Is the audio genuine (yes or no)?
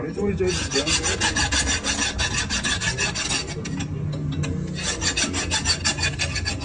yes